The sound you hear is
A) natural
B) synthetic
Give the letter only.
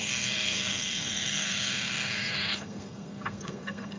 B